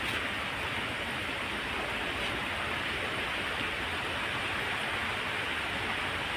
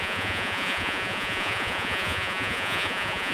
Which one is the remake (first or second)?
second